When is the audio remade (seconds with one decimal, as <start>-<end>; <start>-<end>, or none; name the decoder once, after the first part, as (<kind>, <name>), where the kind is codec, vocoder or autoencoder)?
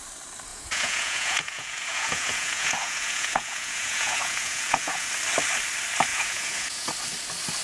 0.5-5.1 (vocoder, Vocos); 6.1-6.9